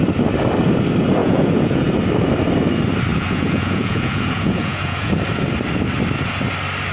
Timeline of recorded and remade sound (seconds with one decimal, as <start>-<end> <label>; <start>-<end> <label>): 0.0-1.2 recorded; 1.2-1.9 remade; 1.9-3.1 recorded; 3.1-5.1 remade; 5.1-6.9 recorded